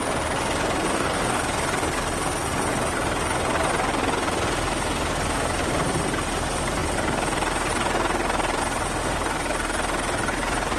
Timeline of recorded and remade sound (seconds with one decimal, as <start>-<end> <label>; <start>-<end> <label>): 0.0-0.9 recorded; 0.9-1.4 remade; 1.4-10.8 recorded